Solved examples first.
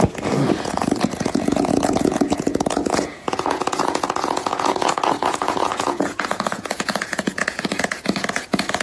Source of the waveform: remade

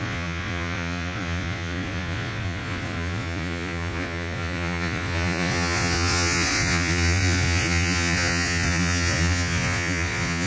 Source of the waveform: remade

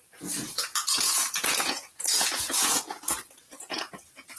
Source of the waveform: remade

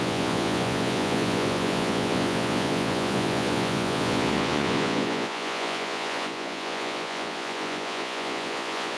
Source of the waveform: remade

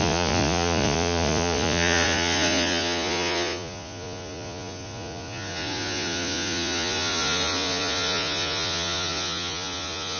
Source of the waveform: remade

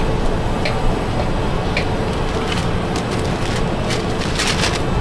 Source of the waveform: recorded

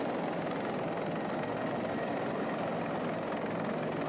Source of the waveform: recorded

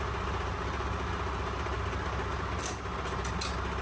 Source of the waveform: recorded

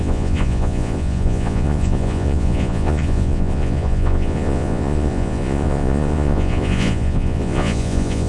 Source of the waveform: remade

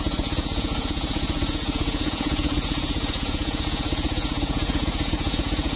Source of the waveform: remade